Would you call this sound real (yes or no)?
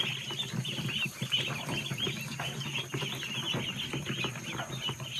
yes